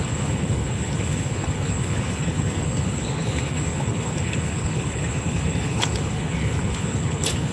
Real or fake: fake